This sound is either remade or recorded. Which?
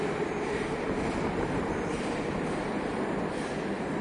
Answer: recorded